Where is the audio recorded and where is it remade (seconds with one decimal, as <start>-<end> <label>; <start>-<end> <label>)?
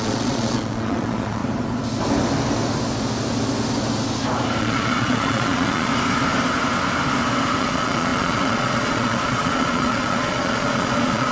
0.0-1.4 remade; 1.4-4.6 recorded; 4.6-5.9 remade; 5.9-7.6 recorded; 7.6-11.3 remade